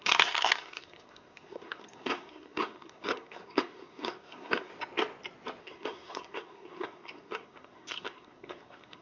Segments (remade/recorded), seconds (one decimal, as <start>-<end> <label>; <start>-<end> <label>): 0.0-4.7 remade; 4.7-5.6 recorded; 5.6-9.0 remade

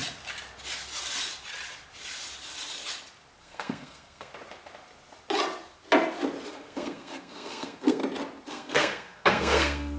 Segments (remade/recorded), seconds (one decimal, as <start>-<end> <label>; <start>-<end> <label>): 0.0-3.4 recorded; 3.4-4.3 remade; 4.3-6.5 recorded; 6.5-8.0 remade; 8.0-8.5 recorded; 8.5-10.0 remade